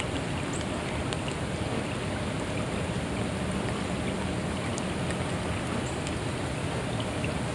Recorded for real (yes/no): yes